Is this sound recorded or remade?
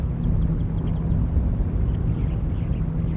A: recorded